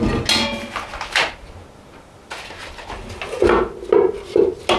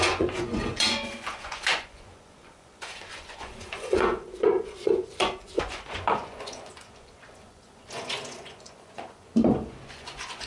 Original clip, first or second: first